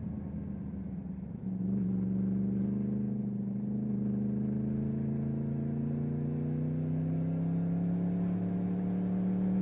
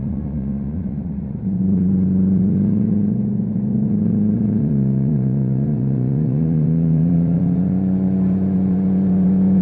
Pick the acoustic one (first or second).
first